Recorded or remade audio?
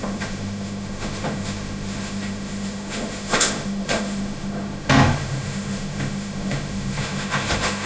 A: remade